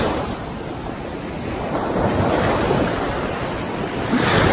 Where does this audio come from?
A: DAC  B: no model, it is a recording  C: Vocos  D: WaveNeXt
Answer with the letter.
B